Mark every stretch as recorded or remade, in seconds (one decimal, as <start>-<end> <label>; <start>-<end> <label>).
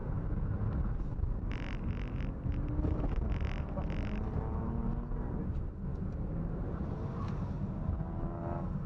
0.0-8.9 recorded